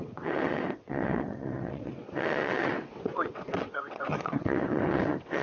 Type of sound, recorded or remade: remade